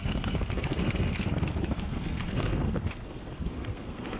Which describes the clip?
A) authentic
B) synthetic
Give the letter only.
B